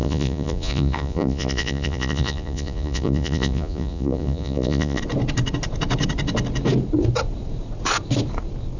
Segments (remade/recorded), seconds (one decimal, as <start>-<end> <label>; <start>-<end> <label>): 0.0-5.0 remade; 5.0-8.8 recorded